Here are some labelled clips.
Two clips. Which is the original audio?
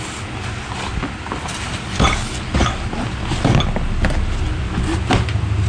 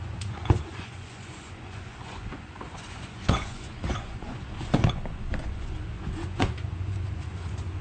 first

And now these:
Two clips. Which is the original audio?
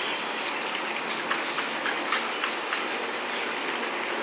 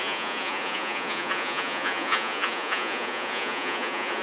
first